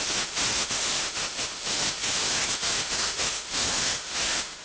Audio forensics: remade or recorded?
remade